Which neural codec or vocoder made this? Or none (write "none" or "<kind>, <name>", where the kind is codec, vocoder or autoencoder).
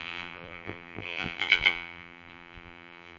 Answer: vocoder, BigVGAN v2